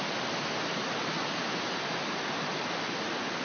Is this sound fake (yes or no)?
no